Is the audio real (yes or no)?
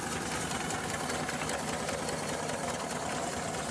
yes